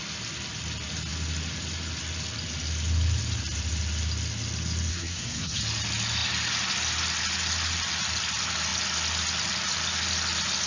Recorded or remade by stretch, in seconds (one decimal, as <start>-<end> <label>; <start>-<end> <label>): 0.0-4.9 recorded; 4.9-5.6 remade; 5.6-10.7 recorded

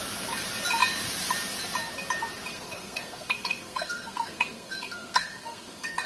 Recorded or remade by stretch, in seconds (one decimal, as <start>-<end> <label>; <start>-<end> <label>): 0.0-2.5 recorded; 2.5-6.1 remade

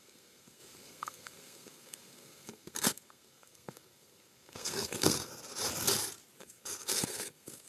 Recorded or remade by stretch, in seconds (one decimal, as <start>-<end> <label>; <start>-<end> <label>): 0.0-5.3 remade; 5.3-6.4 recorded; 6.4-7.7 remade

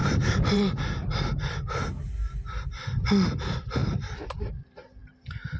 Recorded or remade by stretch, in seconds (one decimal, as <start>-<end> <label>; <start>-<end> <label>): 0.0-1.7 remade; 1.7-2.2 recorded; 2.2-2.8 remade; 2.8-3.8 recorded; 3.8-4.5 remade; 4.5-5.6 recorded

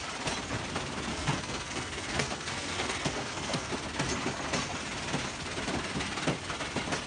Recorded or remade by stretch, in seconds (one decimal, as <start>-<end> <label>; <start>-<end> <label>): 0.0-1.1 recorded; 1.1-3.7 remade; 3.7-7.1 recorded

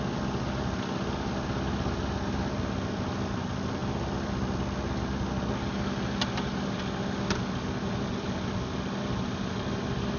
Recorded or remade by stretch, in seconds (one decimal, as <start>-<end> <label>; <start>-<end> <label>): 0.0-10.2 recorded

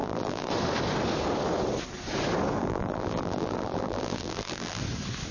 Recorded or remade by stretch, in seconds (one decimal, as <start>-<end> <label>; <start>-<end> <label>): 0.0-0.5 remade; 0.5-2.6 recorded; 2.6-4.8 remade; 4.8-5.3 recorded